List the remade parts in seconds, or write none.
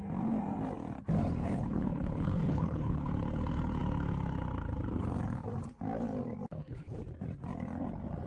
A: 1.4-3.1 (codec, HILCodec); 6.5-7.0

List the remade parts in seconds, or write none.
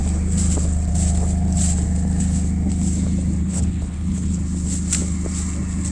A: 3.4-4.4 (codec, HILCodec)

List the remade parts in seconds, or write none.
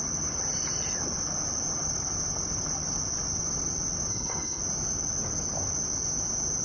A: 4.1-4.6 (codec, HILCodec)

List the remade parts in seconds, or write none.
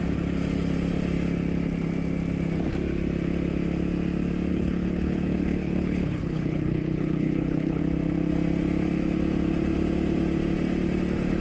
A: 4.5-7.8 (codec, HILCodec)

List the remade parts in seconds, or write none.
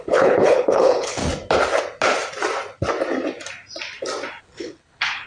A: 0.0-1.2 (codec, HILCodec); 4.4-5.3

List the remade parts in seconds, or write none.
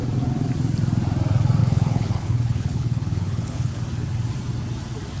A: 1.6-3.8 (codec, HILCodec)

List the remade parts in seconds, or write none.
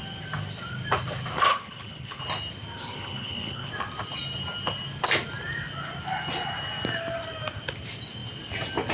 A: 1.5-2.2 (codec, HILCodec); 2.8-3.7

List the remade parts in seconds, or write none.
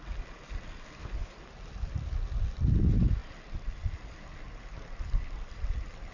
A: 1.0-1.5 (codec, HILCodec)